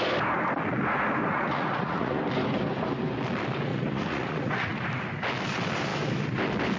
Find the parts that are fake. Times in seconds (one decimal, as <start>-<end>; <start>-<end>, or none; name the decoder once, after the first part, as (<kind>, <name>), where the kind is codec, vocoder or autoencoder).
1.3-2.2 (vocoder, Vocos); 3.7-4.8